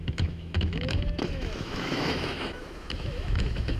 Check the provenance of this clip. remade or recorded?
remade